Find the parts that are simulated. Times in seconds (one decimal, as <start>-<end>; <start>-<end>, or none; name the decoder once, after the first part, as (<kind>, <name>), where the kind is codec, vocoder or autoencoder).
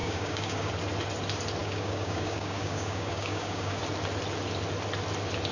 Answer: 0.0-0.7 (codec, DAC); 1.6-3.8